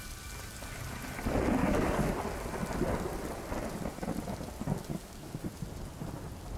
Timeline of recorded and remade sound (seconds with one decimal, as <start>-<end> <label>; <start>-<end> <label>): 0.0-1.6 recorded; 1.6-2.1 remade; 2.1-4.9 recorded; 4.9-5.5 remade; 5.5-6.6 recorded